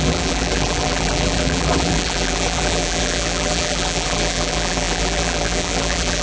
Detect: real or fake fake